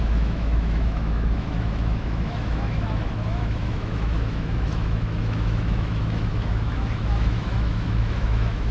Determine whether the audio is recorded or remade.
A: remade